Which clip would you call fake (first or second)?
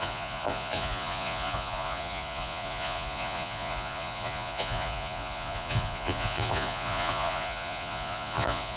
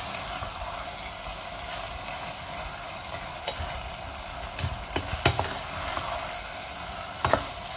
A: first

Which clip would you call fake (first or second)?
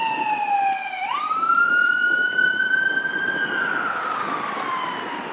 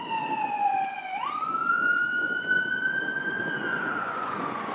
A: second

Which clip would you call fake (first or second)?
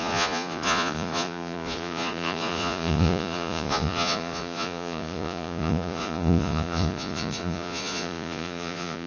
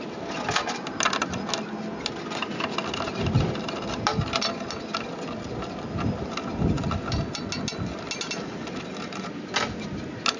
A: first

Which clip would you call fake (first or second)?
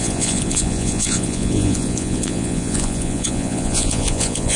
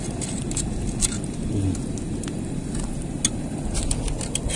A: first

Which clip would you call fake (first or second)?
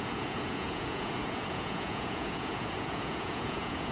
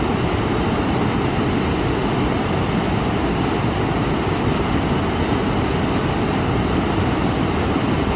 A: first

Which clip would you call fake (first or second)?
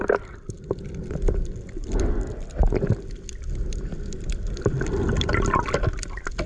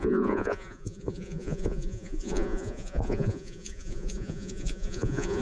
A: second